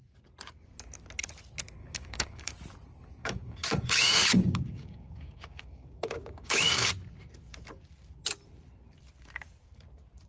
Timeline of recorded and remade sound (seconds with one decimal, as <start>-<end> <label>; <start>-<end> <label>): 0.0-1.8 recorded; 1.8-2.5 remade; 2.5-3.2 recorded; 3.2-6.9 remade; 6.9-10.3 recorded

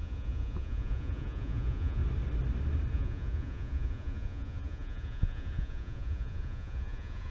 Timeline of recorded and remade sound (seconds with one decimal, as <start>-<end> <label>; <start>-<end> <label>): 0.0-2.0 remade; 2.0-2.9 recorded; 2.9-7.3 remade

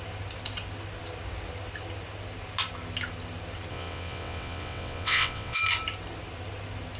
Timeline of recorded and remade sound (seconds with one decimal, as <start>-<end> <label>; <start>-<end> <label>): 0.0-3.7 recorded; 3.7-5.6 remade; 5.6-7.0 recorded

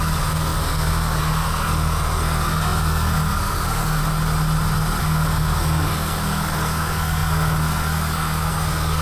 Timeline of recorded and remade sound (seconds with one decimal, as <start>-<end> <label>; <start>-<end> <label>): 0.0-4.0 remade; 4.0-5.0 recorded; 5.0-9.0 remade

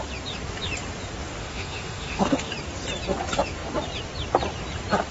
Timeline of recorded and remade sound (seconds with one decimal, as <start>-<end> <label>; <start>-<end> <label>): 0.0-1.4 recorded; 1.4-2.5 remade; 2.5-5.1 recorded